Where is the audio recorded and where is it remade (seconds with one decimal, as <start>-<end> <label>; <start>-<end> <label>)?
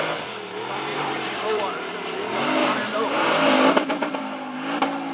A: 0.0-0.9 recorded; 0.9-1.9 remade; 1.9-2.6 recorded; 2.6-3.7 remade; 3.7-5.1 recorded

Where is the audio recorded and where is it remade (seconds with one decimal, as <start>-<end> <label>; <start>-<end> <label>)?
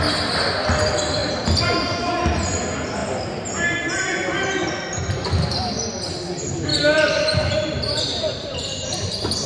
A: 0.0-6.7 recorded; 6.7-9.1 remade; 9.1-9.5 recorded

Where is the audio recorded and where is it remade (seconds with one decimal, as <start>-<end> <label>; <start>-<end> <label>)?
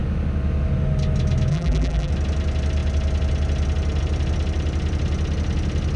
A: 0.0-1.5 recorded; 1.5-2.1 remade; 2.1-6.0 recorded